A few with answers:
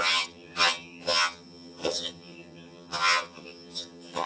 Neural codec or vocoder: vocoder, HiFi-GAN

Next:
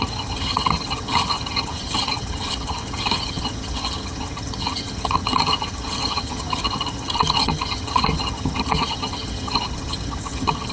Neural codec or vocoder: vocoder, HiFi-GAN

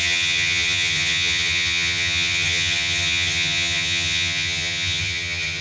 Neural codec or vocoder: vocoder, HiFi-GAN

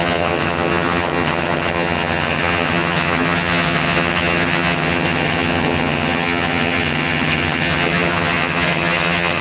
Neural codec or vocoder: vocoder, HiFi-GAN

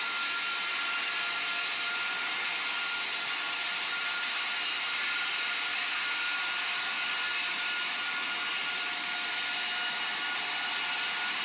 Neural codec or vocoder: none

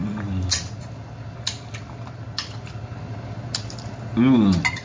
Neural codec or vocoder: none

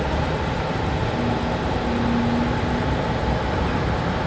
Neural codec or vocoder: none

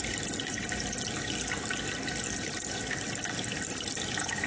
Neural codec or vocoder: none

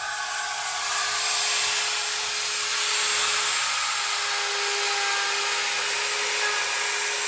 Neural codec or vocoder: none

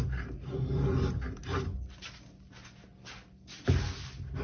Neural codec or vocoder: none